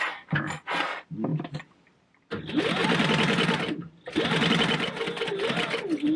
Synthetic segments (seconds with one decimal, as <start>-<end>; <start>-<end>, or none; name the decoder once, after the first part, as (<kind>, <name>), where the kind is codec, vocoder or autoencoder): none